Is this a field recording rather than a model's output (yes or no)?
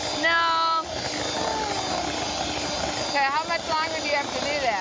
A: yes